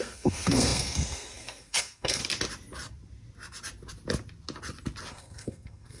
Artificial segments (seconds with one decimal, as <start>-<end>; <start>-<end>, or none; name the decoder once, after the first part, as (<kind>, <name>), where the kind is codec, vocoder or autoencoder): 0.0-2.2 (codec, SNAC); 5.1-6.0

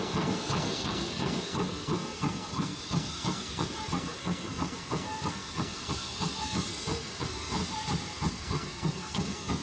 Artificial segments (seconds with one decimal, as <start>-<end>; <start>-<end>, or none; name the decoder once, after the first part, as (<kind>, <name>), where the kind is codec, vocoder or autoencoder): 0.0-7.6 (codec, SNAC); 8.3-9.6

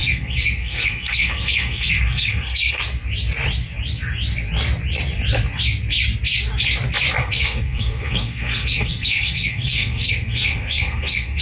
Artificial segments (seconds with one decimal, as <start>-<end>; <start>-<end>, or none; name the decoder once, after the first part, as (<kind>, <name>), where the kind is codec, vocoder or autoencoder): 0.0-2.8 (codec, SNAC); 7.2-11.4

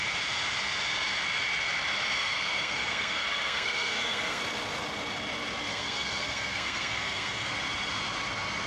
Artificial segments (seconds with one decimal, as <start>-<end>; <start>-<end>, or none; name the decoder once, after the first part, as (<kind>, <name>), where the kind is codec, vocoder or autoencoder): 2.2-4.4 (codec, SNAC); 5.7-7.5